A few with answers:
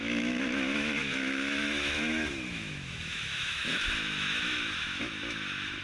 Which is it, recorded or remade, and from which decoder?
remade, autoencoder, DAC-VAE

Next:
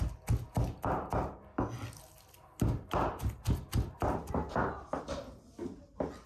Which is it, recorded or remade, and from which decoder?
recorded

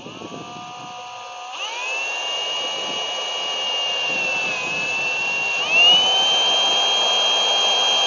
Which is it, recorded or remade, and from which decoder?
recorded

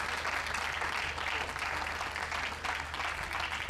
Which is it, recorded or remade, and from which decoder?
recorded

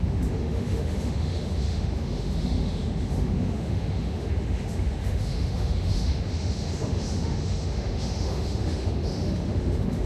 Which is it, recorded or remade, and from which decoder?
remade, autoencoder, DAC-VAE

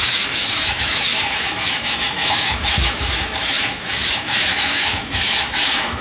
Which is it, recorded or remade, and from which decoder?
remade, autoencoder, DAC-VAE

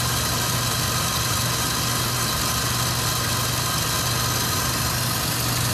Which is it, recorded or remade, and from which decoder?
recorded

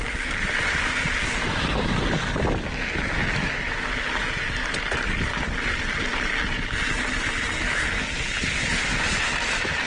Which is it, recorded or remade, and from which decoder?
recorded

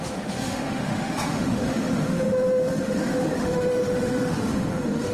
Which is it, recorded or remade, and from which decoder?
remade, autoencoder, DAC-VAE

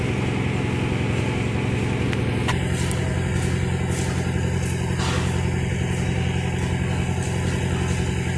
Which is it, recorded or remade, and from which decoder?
recorded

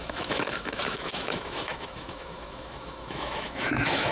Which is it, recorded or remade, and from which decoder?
remade, autoencoder, DAC-VAE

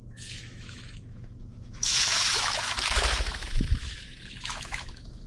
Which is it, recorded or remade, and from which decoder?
remade, autoencoder, DAC-VAE